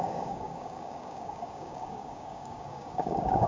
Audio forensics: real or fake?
fake